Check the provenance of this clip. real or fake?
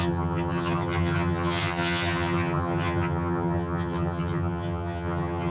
fake